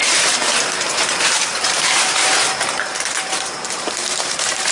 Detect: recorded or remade remade